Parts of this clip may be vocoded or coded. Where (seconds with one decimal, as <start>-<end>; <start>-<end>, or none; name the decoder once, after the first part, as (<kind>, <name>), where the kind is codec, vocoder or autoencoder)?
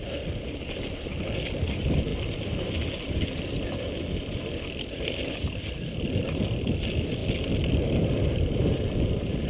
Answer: 0.0-7.2 (vocoder, BigVGAN v2); 7.7-9.5